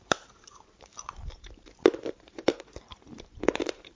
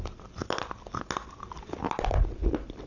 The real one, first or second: second